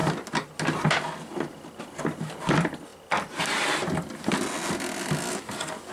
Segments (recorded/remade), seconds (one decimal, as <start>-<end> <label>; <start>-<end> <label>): 0.0-5.9 recorded